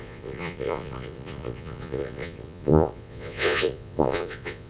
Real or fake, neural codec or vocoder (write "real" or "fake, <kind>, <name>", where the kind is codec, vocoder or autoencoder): fake, vocoder, Vocos